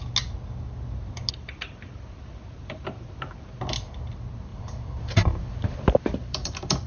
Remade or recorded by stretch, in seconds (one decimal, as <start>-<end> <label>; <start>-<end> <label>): 0.0-4.5 recorded; 4.5-6.9 remade